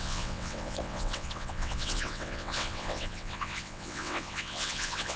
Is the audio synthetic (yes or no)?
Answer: yes